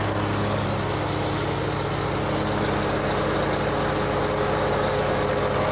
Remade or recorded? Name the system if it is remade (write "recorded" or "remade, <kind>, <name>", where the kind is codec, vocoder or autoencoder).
recorded